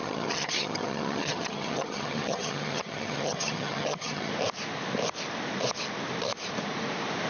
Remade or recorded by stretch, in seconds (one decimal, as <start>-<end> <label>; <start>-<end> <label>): 0.0-4.3 remade; 4.3-7.3 recorded